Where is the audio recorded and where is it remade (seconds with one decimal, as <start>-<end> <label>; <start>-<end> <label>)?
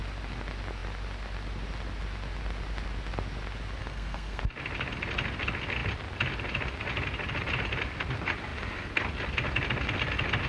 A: 0.0-3.8 recorded; 3.8-4.4 remade; 4.4-10.5 recorded